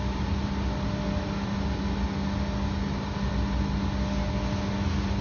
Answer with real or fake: real